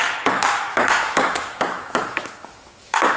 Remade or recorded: remade